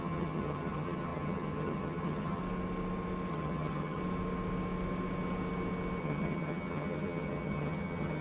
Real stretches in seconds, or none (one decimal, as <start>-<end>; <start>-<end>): 2.4-3.3; 4.0-6.0